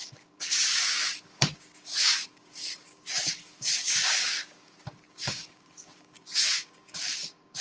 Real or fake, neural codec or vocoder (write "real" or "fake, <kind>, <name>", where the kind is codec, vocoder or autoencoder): fake, codec, DAC